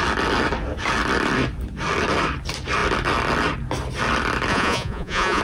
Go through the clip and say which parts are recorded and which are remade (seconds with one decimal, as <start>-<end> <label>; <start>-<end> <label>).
0.0-4.5 recorded; 4.5-5.4 remade